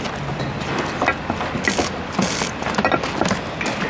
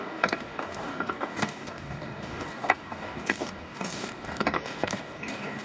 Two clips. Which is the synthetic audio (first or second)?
second